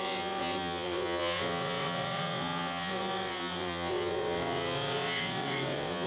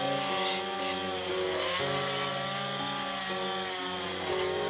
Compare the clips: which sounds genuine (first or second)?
second